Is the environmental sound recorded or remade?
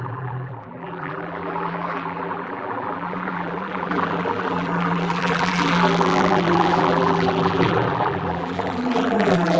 remade